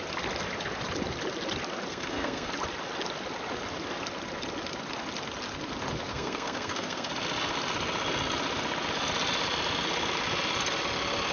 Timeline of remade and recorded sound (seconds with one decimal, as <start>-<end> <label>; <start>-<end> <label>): 0.0-1.9 recorded; 1.9-2.5 remade; 2.5-6.1 recorded; 6.1-7.1 remade; 7.1-11.3 recorded